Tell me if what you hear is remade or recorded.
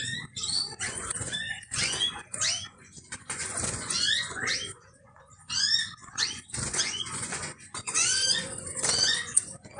remade